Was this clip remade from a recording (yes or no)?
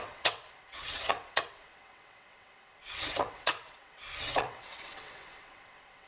yes